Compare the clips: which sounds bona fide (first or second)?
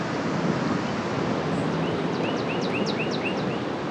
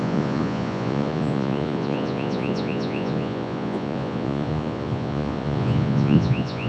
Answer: first